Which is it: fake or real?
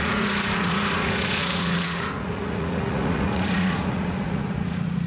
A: fake